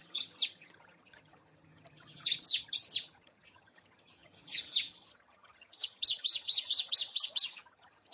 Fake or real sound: fake